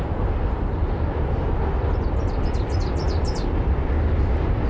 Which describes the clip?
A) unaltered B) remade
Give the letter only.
A